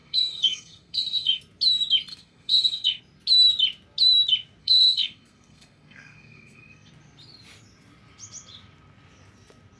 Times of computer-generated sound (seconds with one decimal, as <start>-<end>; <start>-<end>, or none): 0.0-1.4; 2.1-3.0; 4.6-6.9